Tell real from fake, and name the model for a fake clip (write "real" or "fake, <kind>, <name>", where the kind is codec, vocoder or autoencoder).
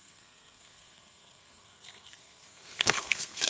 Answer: fake, codec, SNAC